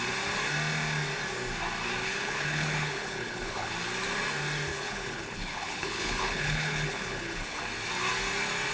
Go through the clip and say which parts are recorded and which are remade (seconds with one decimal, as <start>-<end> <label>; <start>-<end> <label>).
0.0-2.0 recorded; 2.0-3.7 remade; 3.7-4.7 recorded; 4.7-7.6 remade; 7.6-8.7 recorded